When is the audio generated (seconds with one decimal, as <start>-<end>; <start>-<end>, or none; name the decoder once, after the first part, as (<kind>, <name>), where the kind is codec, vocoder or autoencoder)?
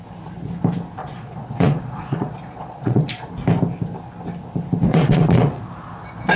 1.0-3.3 (vocoder, Vocos); 4.9-5.6